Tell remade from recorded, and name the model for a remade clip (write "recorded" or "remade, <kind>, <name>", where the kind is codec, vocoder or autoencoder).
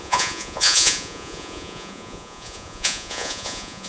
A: remade, vocoder, Vocos